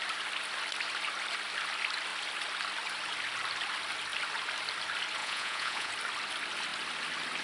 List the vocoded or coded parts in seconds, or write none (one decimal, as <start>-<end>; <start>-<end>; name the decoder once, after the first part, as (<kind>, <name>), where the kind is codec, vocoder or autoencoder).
5.2-5.9 (vocoder, Vocos)